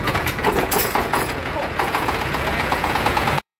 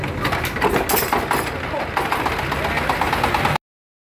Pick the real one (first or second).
second